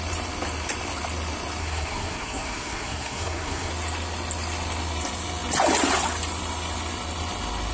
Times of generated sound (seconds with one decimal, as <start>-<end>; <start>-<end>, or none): 1.6-3.7